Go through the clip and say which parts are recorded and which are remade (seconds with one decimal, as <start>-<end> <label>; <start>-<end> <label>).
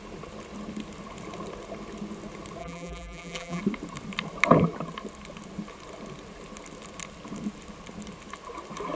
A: 0.0-2.6 recorded; 2.6-3.6 remade; 3.6-9.0 recorded